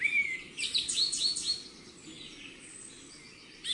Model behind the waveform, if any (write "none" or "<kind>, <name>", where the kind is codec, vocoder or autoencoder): none